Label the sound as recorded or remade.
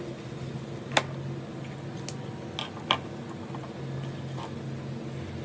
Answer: recorded